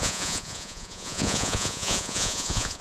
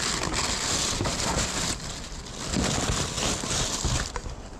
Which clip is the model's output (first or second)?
first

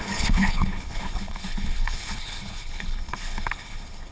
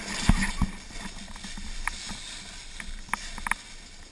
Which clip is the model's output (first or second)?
first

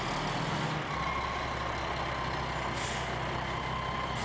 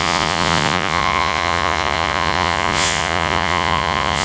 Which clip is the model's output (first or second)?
second